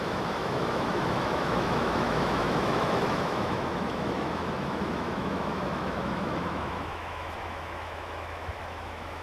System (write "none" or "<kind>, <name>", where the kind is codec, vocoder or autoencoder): autoencoder, DAC-VAE